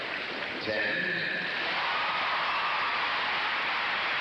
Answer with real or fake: fake